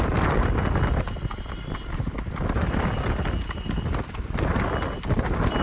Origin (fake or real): real